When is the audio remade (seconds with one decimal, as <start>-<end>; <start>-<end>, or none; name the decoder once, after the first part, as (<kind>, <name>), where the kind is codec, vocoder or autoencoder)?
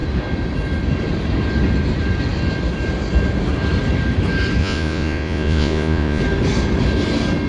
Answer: 4.6-6.2 (vocoder, Vocos)